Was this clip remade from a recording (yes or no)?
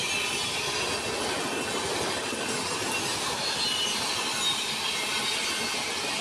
no